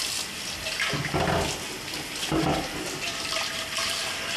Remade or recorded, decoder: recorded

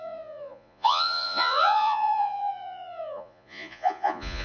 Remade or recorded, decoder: remade, vocoder, Vocos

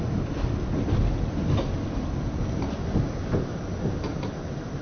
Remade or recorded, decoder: recorded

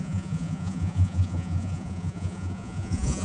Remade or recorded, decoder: remade, vocoder, Vocos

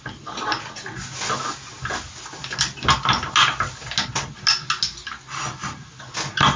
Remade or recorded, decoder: recorded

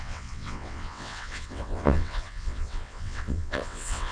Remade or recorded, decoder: remade, vocoder, WaveNeXt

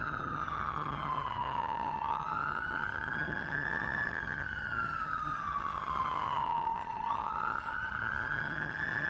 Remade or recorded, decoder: remade, vocoder, HiFi-GAN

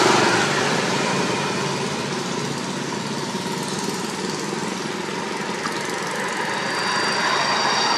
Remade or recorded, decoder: recorded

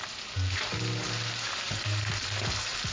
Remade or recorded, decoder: recorded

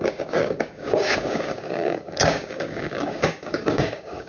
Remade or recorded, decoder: remade, codec, DAC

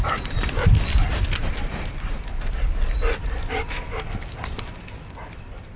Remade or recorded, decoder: recorded